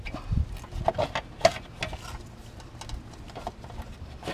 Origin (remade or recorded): recorded